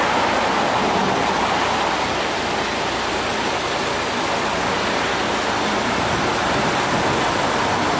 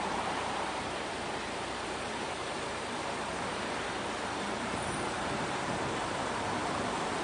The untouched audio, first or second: first